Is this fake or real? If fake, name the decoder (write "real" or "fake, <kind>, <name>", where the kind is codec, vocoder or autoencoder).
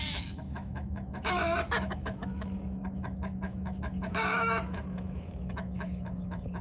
fake, autoencoder, DAC-VAE